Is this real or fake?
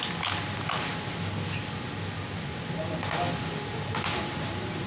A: real